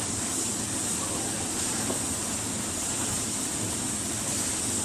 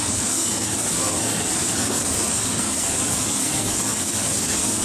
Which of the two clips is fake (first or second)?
second